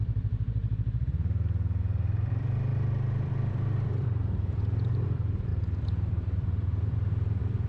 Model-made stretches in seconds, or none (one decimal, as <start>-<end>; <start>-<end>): 0.0-0.6; 1.8-7.7